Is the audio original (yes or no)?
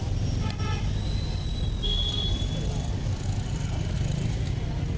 yes